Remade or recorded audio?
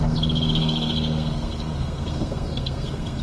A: remade